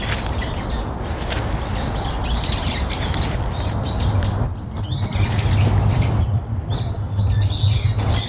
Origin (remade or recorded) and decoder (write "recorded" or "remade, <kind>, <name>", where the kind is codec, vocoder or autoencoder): recorded